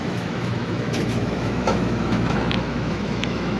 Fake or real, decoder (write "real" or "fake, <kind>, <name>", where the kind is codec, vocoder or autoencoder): fake, autoencoder, DAC-VAE